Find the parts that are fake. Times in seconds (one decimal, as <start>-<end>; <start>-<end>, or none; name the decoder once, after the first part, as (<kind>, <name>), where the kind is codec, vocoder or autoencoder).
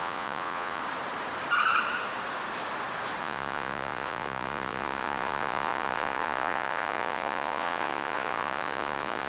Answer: 0.0-0.8 (vocoder, Vocos); 3.2-9.3